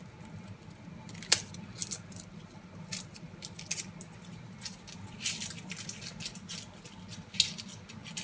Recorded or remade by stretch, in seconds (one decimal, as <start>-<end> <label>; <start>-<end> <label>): 0.0-8.2 recorded